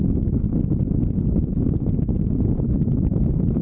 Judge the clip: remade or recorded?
recorded